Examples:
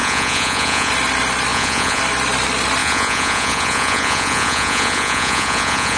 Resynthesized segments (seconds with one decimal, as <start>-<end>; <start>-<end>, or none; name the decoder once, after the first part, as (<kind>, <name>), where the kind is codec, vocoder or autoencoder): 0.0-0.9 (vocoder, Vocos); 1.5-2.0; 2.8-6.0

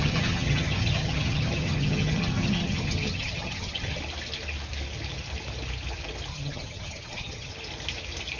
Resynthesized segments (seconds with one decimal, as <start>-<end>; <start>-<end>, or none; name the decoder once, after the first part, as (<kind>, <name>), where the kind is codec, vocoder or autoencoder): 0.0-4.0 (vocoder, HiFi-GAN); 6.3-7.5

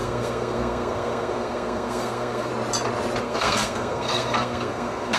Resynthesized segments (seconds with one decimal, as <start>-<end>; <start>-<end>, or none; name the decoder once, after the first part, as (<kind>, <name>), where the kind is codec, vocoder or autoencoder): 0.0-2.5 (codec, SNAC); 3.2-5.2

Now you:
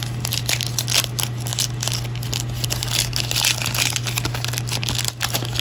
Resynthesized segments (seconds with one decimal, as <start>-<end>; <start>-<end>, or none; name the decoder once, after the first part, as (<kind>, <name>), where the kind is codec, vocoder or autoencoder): none

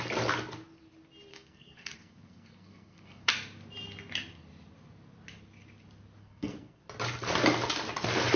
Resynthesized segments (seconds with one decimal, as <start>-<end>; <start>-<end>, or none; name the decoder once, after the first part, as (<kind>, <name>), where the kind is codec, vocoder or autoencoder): 1.3-3.3 (codec, SNAC); 6.2-6.8

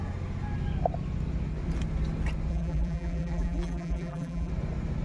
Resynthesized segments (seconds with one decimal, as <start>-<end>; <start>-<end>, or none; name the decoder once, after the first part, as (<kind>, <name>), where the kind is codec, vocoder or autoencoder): 2.5-4.5 (vocoder, BigVGAN v2)

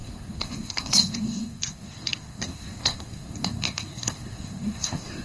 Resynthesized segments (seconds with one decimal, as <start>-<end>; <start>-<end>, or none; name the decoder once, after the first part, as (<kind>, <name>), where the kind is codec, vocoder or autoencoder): 0.0-5.2 (codec, SNAC)